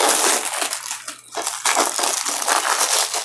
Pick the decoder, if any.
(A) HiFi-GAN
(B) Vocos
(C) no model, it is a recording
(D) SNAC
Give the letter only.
C